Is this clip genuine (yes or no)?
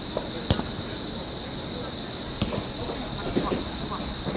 yes